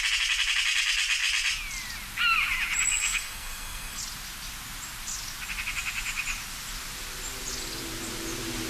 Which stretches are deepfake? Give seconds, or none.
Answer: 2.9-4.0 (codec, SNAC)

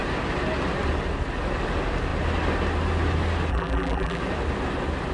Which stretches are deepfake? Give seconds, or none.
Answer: 3.5-4.2 (vocoder, BigVGAN v2)

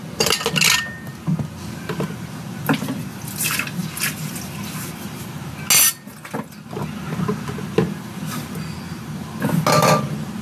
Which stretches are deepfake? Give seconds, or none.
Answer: none

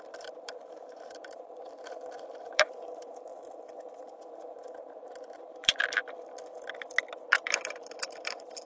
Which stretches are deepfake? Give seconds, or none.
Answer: 0.0-3.3 (vocoder, BigVGAN v2); 4.9-5.8; 7.3-8.7

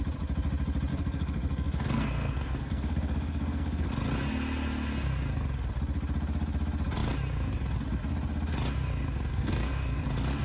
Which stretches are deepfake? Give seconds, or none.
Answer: 0.9-3.9 (codec, SNAC); 9.3-10.0

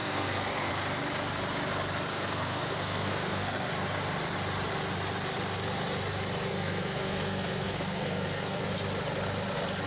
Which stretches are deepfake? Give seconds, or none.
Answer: 0.0-0.7 (codec, SNAC); 2.1-3.7; 6.5-8.6

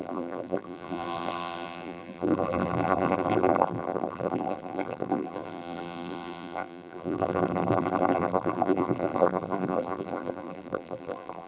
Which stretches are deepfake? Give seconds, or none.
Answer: 0.0-11.5 (vocoder, BigVGAN v2)

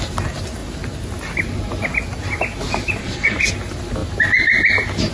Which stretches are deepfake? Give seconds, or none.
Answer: 3.0-3.5 (vocoder, Vocos)